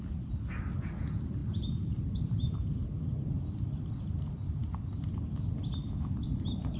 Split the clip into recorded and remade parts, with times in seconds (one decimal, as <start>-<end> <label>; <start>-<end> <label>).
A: 0.0-6.8 recorded

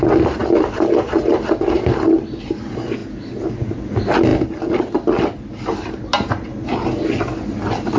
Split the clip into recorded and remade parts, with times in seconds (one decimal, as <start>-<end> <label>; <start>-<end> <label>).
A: 0.0-0.4 recorded; 0.4-2.6 remade; 2.6-8.0 recorded

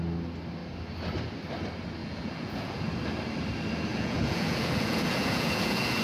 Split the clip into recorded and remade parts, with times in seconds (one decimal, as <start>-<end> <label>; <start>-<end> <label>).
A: 0.0-2.0 recorded; 2.0-2.9 remade; 2.9-3.9 recorded; 3.9-6.0 remade